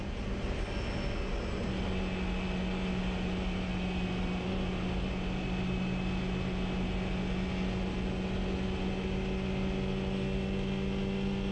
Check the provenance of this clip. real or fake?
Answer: real